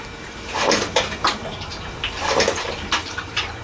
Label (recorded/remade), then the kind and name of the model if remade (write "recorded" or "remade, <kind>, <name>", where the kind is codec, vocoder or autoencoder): remade, vocoder, BigVGAN v2